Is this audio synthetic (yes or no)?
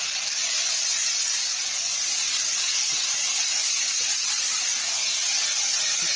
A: no